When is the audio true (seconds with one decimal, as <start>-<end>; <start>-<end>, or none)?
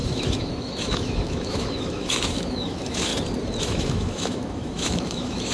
3.1-3.6